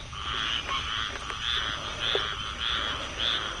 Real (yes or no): yes